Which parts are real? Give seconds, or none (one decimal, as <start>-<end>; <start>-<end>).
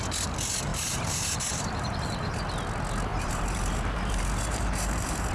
0.0-0.7; 2.4-3.1